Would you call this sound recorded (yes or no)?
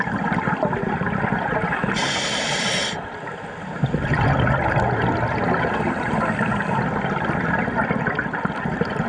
yes